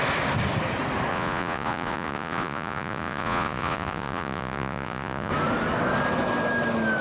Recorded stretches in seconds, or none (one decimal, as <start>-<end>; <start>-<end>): 0.0-1.1; 5.3-7.0